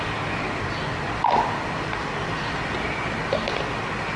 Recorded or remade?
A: recorded